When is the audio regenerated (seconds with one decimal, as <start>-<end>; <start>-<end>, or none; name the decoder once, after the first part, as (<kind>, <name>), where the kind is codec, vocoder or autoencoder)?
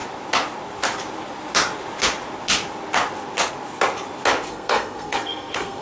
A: 4.5-5.8 (codec, SNAC)